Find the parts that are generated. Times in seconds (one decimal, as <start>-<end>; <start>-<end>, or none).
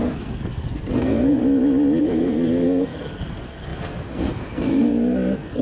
0.0-1.4; 2.0-5.6